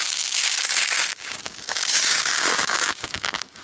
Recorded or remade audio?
remade